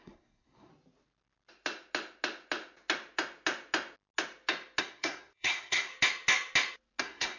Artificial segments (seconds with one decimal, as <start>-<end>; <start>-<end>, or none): 0.0-0.7; 4.8-5.9; 7.0-7.4